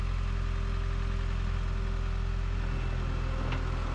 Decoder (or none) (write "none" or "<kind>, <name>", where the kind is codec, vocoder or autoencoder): none